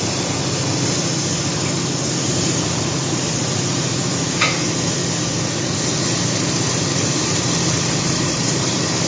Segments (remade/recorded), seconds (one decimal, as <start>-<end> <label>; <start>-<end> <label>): 0.0-0.4 remade; 0.4-2.2 recorded; 2.2-5.0 remade; 5.0-6.2 recorded; 6.2-9.1 remade